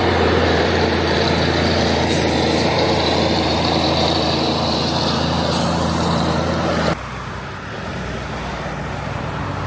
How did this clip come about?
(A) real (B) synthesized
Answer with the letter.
B